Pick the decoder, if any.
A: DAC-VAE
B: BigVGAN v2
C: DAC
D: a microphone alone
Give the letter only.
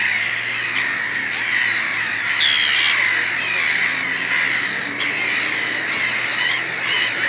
D